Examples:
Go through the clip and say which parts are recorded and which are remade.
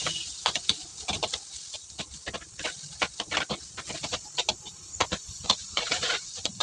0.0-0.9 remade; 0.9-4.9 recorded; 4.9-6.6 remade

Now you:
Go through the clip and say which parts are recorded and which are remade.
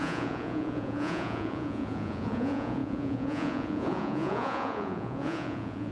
0.0-5.9 remade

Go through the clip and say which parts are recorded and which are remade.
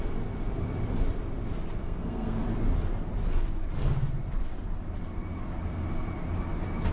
0.0-1.8 recorded; 1.8-2.4 remade; 2.4-6.9 recorded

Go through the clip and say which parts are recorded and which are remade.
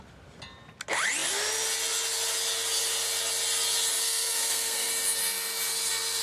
0.0-4.0 recorded; 4.0-4.9 remade; 4.9-6.2 recorded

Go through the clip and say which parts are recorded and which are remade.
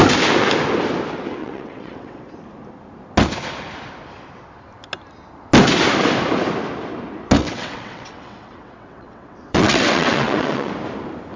0.0-1.4 recorded; 1.4-2.3 remade; 2.3-7.4 recorded; 7.4-10.7 remade; 10.7-11.4 recorded